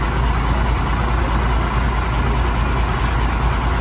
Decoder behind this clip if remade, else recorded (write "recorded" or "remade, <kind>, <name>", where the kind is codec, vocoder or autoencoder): recorded